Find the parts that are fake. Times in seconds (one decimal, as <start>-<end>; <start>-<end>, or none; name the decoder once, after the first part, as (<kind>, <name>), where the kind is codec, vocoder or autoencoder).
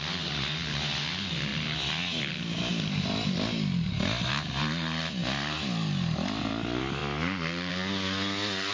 none